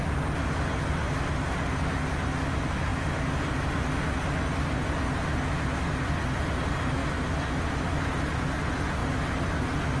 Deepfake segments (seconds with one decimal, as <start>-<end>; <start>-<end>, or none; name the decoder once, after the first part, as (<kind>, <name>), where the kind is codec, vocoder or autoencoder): none